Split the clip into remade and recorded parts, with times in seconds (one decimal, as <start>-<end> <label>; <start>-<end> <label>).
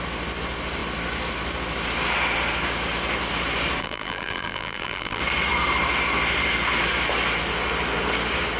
0.0-3.8 recorded; 3.8-5.2 remade; 5.2-8.6 recorded